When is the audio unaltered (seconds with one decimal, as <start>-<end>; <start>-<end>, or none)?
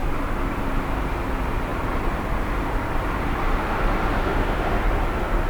0.0-4.2; 4.8-5.5